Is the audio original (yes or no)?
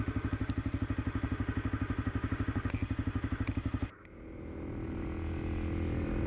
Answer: yes